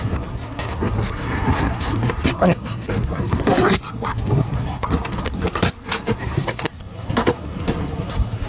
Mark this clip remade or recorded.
remade